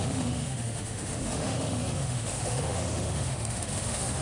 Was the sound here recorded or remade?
remade